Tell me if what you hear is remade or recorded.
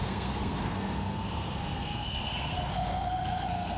remade